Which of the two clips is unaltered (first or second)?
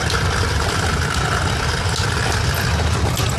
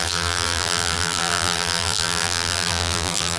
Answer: first